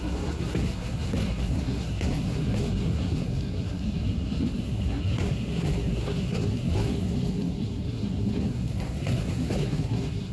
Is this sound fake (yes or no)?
yes